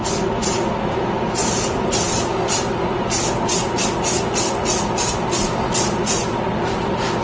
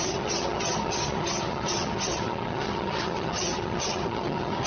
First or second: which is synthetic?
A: second